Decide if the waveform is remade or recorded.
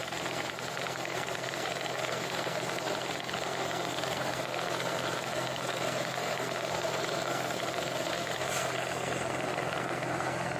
remade